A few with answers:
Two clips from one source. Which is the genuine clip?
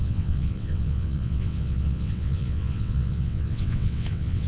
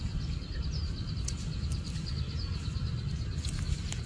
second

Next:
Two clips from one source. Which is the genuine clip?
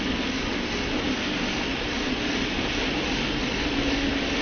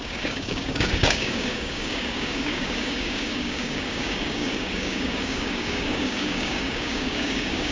first